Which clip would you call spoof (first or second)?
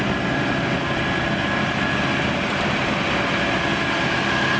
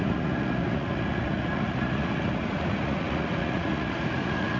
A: second